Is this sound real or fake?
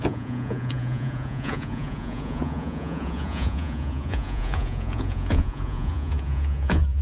fake